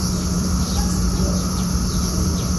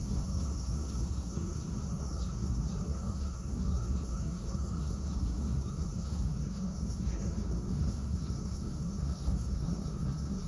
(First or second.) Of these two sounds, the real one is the first